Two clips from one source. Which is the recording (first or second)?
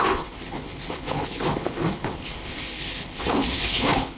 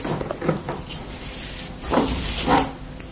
second